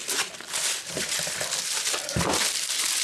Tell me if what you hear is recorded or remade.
remade